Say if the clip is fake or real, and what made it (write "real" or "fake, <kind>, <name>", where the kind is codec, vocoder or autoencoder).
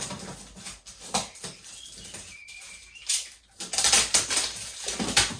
real